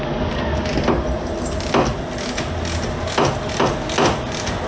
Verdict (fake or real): real